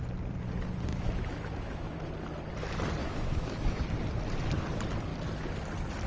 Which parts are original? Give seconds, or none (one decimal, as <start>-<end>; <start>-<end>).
0.0-0.9; 2.0-3.0; 3.8-6.1